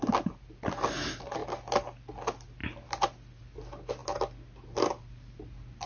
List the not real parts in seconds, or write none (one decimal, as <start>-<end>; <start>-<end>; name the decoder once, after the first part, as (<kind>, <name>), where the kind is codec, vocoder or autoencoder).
none